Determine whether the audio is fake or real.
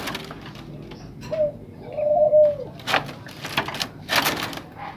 real